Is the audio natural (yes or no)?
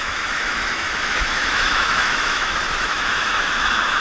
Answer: no